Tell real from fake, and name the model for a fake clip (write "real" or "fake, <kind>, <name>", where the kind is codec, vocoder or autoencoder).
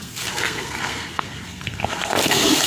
fake, codec, SNAC